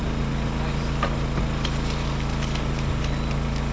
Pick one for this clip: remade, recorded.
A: recorded